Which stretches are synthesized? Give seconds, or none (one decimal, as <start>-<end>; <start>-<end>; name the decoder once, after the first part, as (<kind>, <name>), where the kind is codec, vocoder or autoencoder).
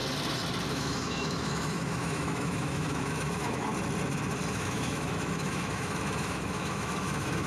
0.7-3.7 (autoencoder, DAC-VAE); 4.5-7.5